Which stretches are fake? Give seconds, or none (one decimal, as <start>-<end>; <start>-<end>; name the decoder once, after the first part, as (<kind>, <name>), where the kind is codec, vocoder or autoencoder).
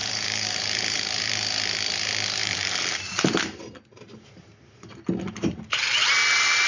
0.0-1.3 (vocoder, BigVGAN v2); 2.4-3.6